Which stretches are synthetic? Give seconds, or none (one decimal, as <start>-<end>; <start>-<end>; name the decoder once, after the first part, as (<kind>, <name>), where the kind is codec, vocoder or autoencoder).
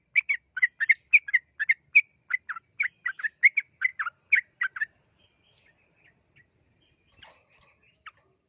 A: none